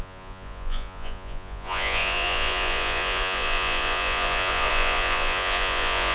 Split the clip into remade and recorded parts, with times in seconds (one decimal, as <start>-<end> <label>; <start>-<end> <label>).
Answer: 0.0-6.1 remade